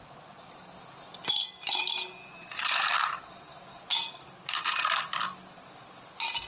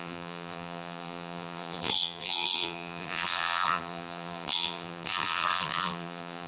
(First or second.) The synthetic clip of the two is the second